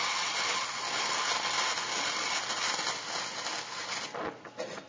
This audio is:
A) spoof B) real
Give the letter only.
B